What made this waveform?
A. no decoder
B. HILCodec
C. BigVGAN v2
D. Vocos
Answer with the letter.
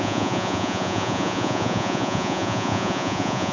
D